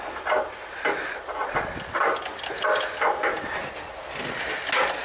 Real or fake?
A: real